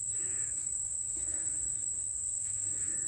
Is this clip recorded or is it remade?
remade